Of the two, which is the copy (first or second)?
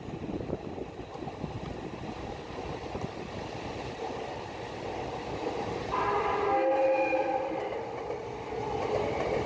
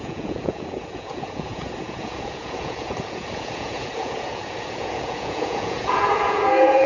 second